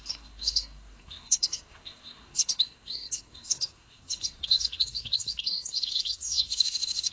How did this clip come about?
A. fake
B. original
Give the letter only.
A